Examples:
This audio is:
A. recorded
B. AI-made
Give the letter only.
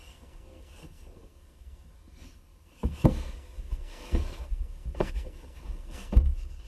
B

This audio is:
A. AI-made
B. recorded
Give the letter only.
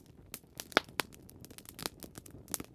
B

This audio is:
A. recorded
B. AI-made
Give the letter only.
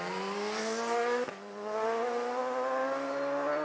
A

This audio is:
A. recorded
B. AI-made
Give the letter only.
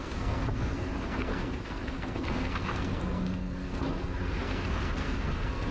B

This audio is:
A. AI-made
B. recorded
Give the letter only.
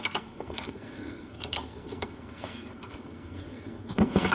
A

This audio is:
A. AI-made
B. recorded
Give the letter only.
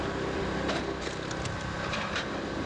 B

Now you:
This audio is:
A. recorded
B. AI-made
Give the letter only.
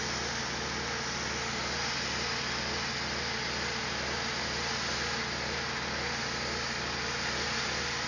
A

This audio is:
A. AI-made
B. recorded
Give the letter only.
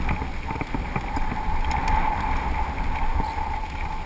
B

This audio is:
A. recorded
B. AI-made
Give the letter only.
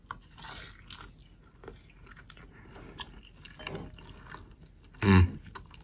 A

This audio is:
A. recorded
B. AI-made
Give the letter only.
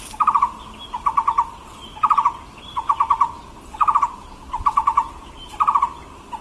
A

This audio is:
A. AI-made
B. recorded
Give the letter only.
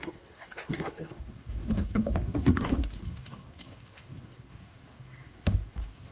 A